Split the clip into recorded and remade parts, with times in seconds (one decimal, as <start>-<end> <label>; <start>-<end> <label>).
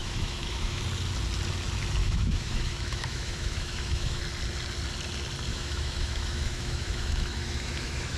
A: 0.0-0.8 remade; 0.8-2.0 recorded; 2.0-4.2 remade; 4.2-5.5 recorded; 5.5-8.2 remade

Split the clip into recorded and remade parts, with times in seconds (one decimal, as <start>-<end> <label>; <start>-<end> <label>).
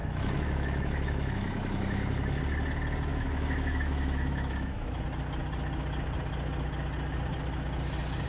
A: 0.0-2.4 remade; 2.4-3.1 recorded; 3.1-5.0 remade; 5.0-8.3 recorded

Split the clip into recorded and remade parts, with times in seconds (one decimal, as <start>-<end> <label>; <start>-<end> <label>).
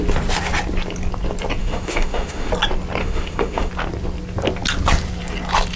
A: 0.0-1.6 recorded; 1.6-2.5 remade; 2.5-3.0 recorded; 3.0-3.7 remade; 3.7-5.8 recorded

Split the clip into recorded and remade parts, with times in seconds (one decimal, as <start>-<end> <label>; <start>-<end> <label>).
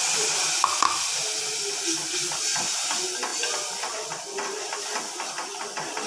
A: 0.0-6.1 recorded